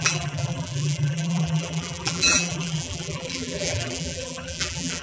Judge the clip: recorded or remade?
remade